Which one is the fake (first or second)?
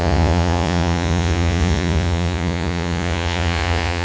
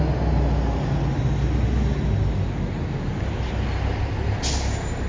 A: first